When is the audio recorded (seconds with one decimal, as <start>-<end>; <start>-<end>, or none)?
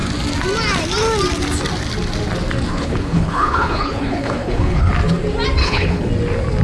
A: 0.0-2.7; 4.9-5.6; 6.1-6.6